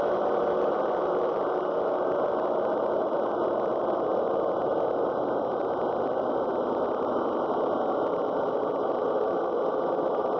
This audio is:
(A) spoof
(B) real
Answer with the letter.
B